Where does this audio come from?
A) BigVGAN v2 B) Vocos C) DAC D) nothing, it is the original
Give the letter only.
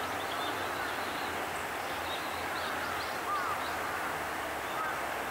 D